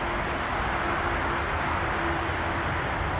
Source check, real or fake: real